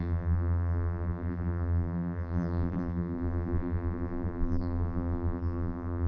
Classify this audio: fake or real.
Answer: fake